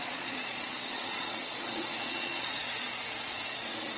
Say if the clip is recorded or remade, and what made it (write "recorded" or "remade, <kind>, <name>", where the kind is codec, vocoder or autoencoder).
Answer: remade, vocoder, Vocos